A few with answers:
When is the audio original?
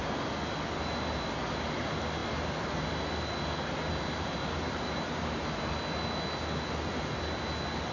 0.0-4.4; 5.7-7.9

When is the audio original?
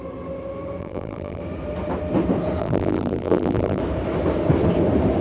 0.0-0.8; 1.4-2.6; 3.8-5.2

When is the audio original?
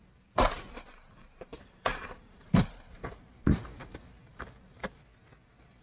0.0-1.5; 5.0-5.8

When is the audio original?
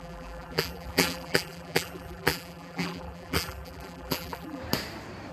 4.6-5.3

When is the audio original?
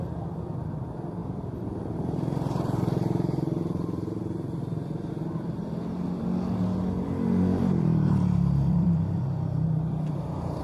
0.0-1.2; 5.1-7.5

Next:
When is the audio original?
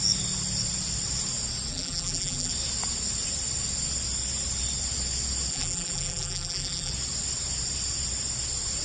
0.0-1.7; 2.5-5.5; 6.9-8.8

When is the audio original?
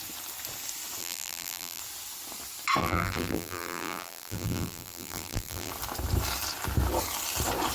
0.0-1.0; 1.8-2.8; 5.7-7.7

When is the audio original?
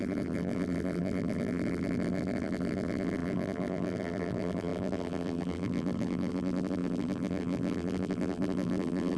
none